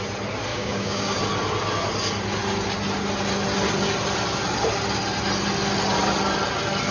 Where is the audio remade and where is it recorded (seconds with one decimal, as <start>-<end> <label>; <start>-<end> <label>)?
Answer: 0.0-0.5 recorded; 0.5-1.2 remade; 1.2-6.9 recorded